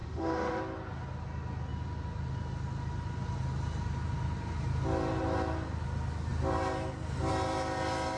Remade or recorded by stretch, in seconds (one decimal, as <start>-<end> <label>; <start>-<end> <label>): 0.0-0.6 remade; 0.6-8.2 recorded